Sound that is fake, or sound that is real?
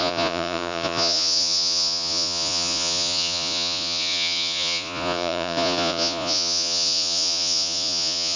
fake